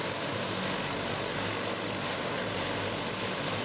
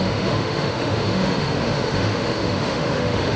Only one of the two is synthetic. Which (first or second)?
second